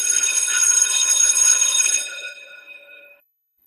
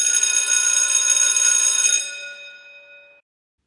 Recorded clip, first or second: second